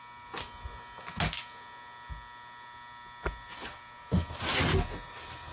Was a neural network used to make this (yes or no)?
no